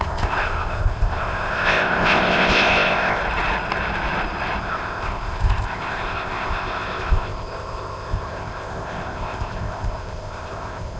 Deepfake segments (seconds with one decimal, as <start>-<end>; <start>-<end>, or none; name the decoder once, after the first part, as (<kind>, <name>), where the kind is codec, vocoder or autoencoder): 0.0-3.2 (codec, ZipCodec); 4.6-11.0